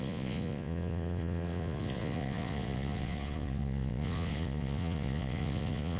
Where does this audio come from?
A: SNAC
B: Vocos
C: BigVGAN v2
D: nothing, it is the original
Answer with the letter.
B